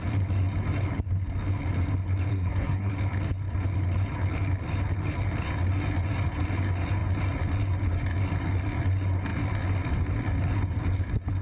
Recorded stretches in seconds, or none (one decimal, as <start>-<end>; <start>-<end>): 0.0-2.3; 2.9-11.4